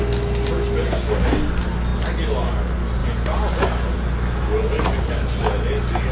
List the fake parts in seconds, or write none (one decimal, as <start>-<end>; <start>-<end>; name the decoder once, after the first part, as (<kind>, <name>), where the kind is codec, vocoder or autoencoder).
none